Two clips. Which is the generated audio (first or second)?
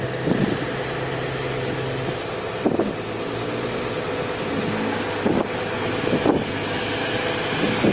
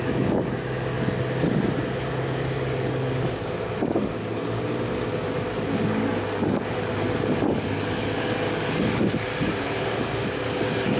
second